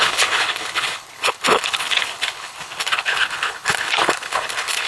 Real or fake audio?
fake